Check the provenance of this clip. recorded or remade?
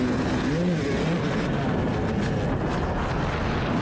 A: recorded